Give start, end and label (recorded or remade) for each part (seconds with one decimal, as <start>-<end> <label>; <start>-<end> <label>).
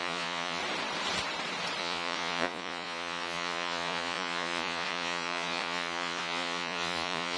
0.0-0.6 remade; 0.6-1.8 recorded; 1.8-7.4 remade